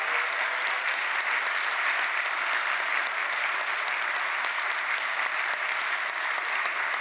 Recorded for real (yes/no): yes